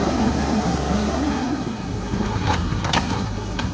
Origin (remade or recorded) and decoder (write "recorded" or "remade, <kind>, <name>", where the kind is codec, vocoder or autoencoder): remade, codec, SNAC